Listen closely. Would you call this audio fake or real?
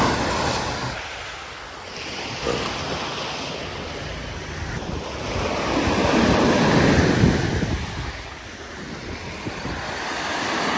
real